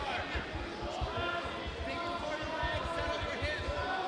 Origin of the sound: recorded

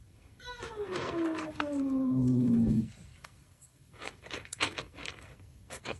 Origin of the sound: remade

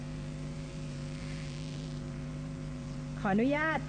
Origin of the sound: remade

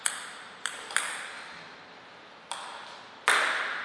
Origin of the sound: recorded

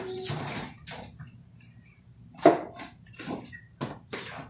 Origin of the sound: remade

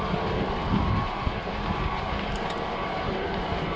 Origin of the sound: remade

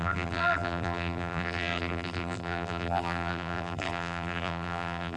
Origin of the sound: remade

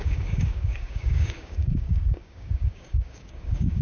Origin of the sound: remade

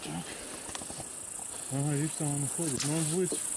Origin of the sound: recorded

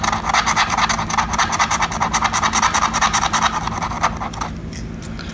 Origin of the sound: recorded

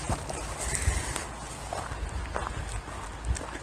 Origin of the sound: recorded